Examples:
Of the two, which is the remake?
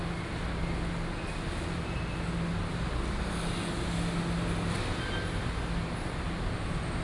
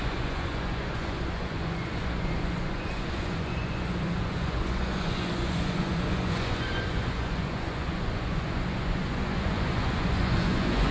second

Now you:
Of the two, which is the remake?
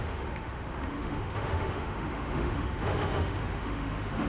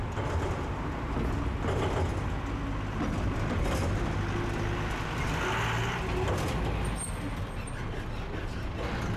first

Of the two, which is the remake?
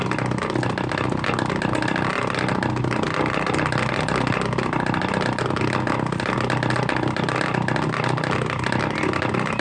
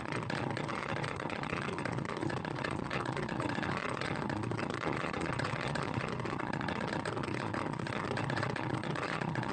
second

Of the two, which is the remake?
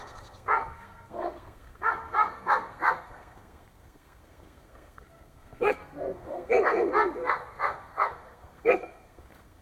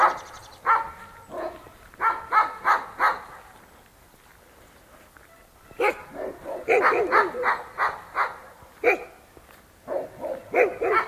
first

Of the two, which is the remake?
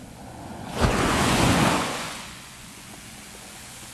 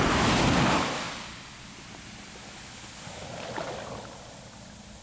first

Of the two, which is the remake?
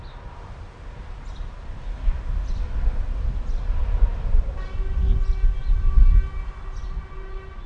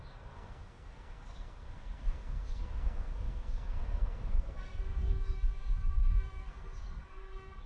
second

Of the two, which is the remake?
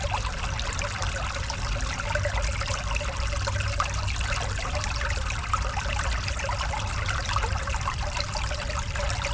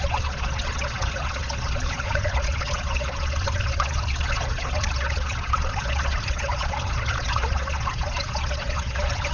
second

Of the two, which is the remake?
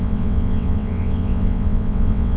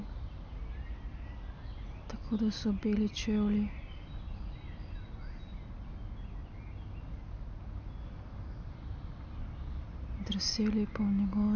first